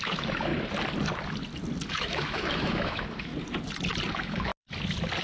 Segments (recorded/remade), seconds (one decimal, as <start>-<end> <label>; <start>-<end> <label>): 0.0-0.5 remade; 0.5-1.9 recorded; 1.9-3.3 remade; 3.3-4.1 recorded; 4.1-4.5 remade; 4.5-5.2 recorded